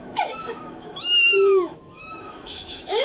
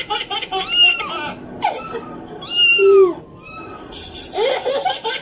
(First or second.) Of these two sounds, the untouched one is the second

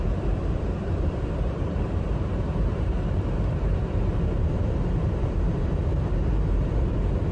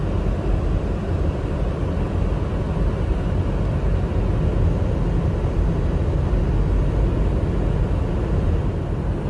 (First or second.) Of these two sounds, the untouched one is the second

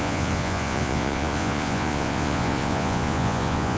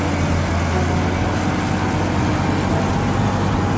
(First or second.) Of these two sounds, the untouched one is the second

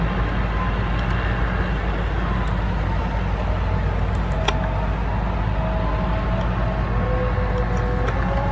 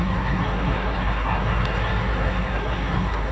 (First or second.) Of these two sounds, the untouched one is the first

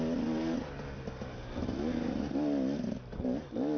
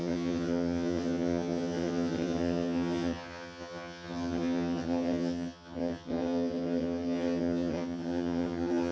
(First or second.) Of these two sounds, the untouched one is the first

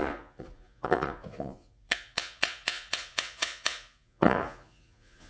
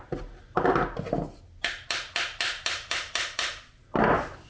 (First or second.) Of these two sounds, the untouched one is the second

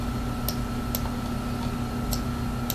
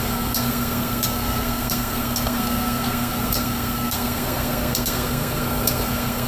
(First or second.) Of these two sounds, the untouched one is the first